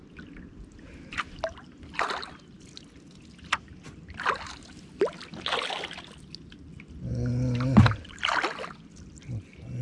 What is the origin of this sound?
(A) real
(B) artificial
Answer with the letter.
A